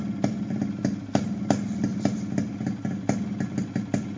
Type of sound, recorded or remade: recorded